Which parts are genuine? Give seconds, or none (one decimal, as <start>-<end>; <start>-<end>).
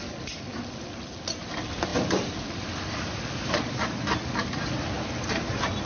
0.0-1.9; 4.6-5.9